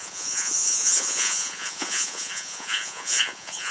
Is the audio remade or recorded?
remade